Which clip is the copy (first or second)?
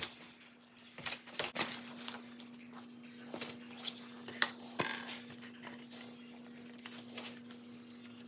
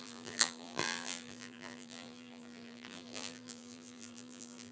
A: second